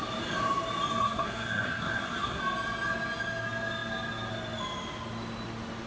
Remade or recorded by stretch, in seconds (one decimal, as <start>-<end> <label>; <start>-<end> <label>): 0.0-1.0 recorded; 1.0-2.4 remade; 2.4-5.9 recorded